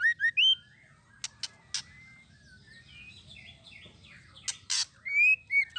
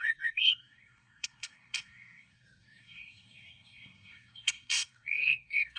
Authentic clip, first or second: first